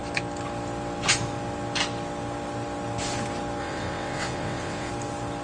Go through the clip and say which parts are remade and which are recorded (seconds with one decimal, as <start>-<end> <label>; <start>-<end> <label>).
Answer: 0.0-3.6 recorded; 3.6-4.9 remade; 4.9-5.4 recorded